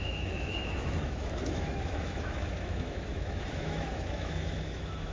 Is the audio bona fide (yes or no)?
no